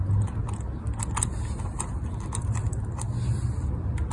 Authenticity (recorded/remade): recorded